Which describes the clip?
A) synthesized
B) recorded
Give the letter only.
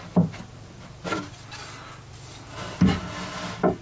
B